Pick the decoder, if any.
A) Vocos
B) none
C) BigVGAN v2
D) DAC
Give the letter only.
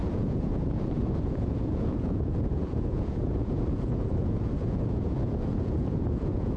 A